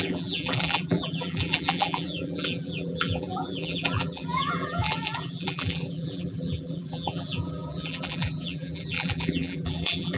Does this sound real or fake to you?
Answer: fake